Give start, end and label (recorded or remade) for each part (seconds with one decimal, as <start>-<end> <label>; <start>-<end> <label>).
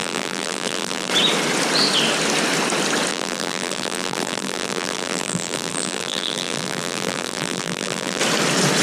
0.0-1.1 remade; 1.1-3.1 recorded; 3.1-8.2 remade; 8.2-8.8 recorded